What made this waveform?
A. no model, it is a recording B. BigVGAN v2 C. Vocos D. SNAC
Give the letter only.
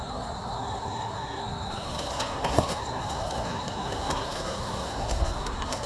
D